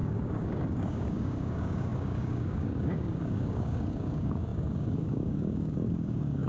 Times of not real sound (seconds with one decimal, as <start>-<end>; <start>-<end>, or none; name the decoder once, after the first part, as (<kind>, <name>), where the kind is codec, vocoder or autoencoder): 0.0-6.5 (codec, DAC)